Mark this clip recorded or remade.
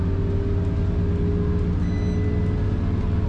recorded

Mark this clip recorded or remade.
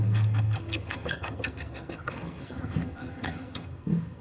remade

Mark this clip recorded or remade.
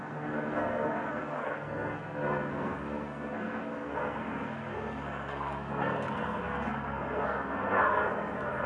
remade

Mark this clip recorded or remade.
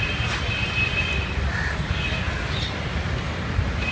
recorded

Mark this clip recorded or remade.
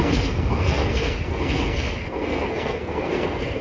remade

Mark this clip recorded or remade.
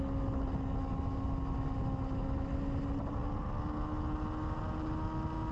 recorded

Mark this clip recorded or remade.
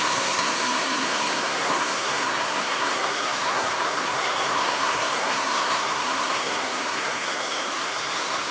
remade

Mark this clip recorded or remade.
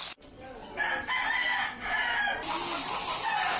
recorded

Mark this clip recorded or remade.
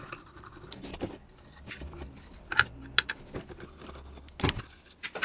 recorded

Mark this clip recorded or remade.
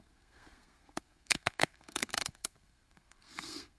remade